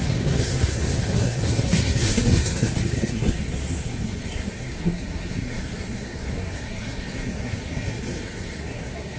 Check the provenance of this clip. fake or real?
fake